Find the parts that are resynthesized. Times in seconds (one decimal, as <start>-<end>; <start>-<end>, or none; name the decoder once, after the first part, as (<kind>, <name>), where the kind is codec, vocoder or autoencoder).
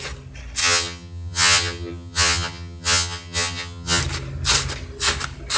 0.6-4.0 (vocoder, HiFi-GAN)